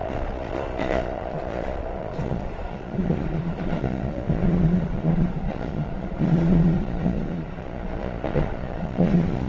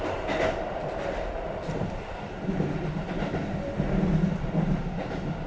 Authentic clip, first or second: second